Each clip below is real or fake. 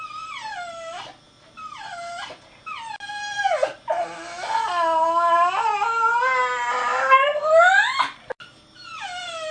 real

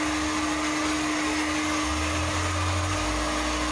real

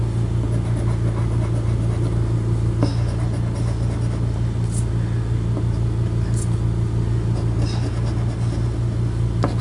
real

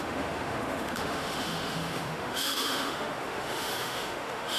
fake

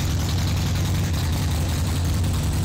real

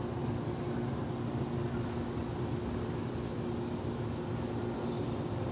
real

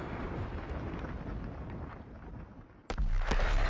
real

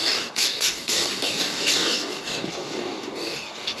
fake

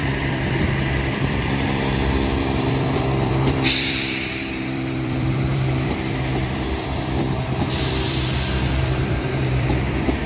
fake